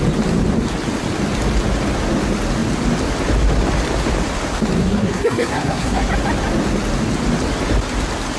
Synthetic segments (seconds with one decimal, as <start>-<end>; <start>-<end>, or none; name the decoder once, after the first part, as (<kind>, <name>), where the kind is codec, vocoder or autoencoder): 4.8-6.1 (codec, SNAC)